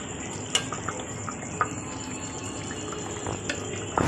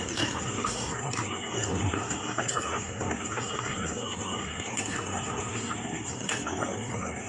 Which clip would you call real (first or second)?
first